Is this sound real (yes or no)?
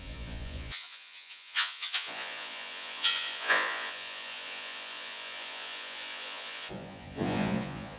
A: no